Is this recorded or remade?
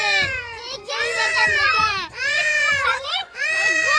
remade